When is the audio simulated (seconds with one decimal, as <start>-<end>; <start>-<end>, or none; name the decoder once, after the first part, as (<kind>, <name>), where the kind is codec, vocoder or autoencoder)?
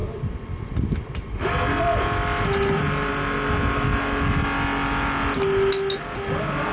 none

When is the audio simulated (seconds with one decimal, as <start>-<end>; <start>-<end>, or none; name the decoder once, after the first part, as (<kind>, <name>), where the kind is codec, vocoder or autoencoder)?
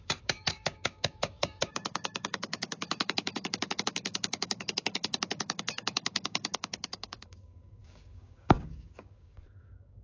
0.0-10.0 (codec, DAC)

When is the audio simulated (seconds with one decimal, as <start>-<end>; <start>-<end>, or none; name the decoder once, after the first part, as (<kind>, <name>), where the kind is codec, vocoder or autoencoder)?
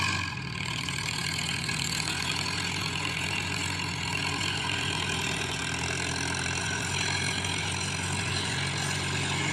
0.0-5.6 (vocoder, Vocos); 6.6-9.5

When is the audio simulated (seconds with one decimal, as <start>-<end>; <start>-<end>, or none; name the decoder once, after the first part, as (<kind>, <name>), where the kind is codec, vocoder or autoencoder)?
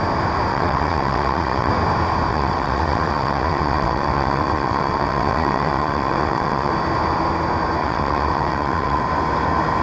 0.5-1.7 (vocoder, WaveNeXt); 2.3-6.7; 7.8-9.0